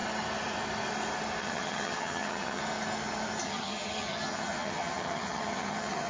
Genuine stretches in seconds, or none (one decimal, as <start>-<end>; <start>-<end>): 0.0-1.4; 2.6-3.4